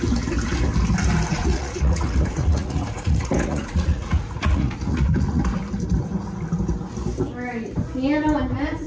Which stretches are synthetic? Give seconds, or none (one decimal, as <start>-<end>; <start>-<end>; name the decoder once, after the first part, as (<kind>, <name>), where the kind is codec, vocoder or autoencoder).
1.3-5.4 (vocoder, Vocos)